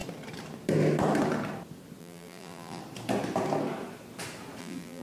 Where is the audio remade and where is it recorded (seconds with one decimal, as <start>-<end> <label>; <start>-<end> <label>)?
0.0-2.0 recorded; 2.0-2.8 remade; 2.8-4.6 recorded; 4.6-5.0 remade